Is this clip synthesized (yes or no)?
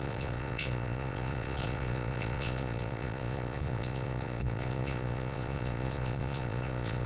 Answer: yes